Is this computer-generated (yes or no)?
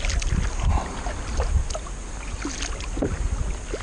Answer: no